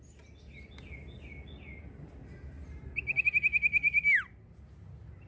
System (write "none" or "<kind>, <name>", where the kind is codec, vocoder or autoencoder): none